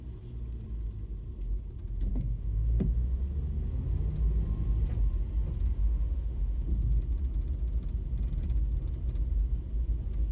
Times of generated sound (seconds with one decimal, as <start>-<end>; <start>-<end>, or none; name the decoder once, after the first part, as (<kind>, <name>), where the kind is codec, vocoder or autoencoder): 2.1-3.2 (autoencoder, DAC-VAE); 5.8-6.7